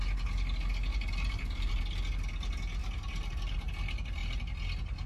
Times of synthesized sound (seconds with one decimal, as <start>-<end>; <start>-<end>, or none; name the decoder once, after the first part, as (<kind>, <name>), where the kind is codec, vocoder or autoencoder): 0.9-1.8 (vocoder, BigVGAN v2); 2.8-3.7